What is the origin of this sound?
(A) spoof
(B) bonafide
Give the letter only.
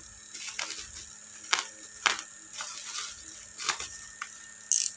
B